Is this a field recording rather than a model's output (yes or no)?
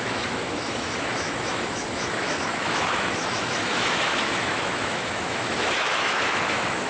no